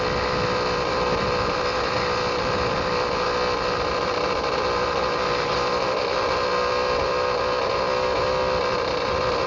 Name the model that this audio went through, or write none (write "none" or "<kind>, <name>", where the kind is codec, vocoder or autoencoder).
none